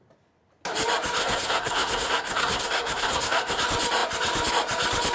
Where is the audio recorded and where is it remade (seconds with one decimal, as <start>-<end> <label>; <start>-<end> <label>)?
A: 0.0-1.2 recorded; 1.2-3.6 remade; 3.6-5.1 recorded